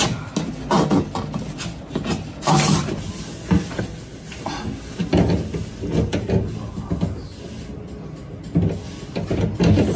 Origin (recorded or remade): recorded